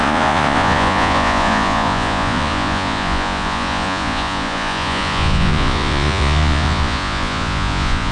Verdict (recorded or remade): remade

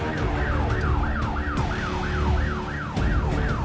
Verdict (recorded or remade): recorded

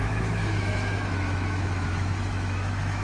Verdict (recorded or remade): remade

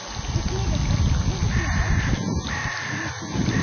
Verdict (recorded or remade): recorded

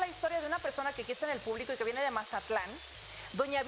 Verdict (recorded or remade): recorded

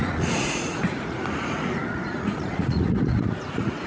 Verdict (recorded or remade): remade